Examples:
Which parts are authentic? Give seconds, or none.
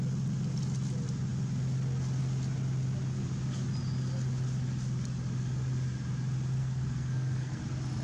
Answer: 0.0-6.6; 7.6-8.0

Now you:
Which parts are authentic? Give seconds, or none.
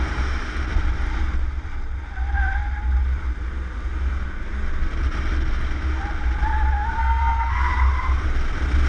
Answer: 0.0-7.0; 7.7-8.9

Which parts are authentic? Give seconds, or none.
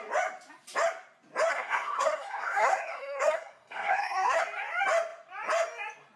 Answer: 0.0-1.5; 4.4-6.2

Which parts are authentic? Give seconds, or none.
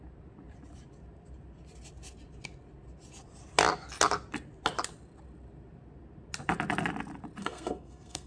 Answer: 0.0-7.4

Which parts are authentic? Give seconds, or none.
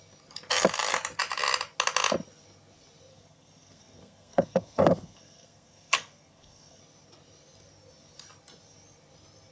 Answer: 0.0-3.1; 6.8-9.5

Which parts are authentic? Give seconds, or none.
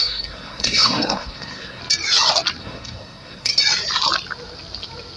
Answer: 1.8-2.6; 3.5-5.2